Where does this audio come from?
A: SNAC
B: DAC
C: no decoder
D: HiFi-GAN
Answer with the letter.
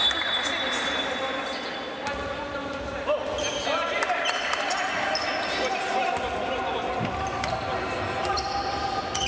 C